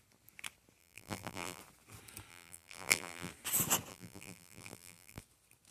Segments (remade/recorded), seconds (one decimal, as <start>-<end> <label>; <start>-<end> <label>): 0.0-0.8 recorded; 0.8-1.6 remade; 1.6-2.3 recorded; 2.3-3.3 remade; 3.3-3.9 recorded; 3.9-5.2 remade; 5.2-5.7 recorded